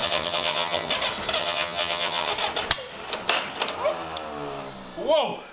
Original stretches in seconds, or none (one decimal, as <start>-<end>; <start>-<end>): 0.9-1.4; 2.3-5.5